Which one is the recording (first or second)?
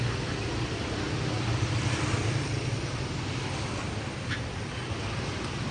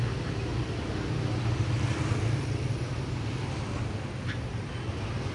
second